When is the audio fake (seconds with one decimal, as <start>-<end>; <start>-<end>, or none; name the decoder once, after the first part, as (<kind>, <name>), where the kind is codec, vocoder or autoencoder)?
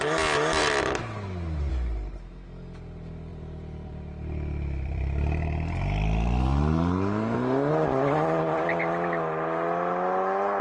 3.3-7.7 (vocoder, BigVGAN v2)